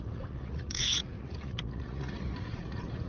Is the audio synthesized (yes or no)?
yes